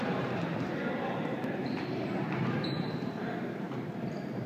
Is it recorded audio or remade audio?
remade